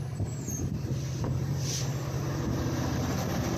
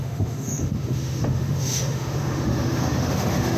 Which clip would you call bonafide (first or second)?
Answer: first